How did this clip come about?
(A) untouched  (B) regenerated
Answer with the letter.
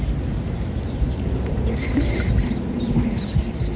B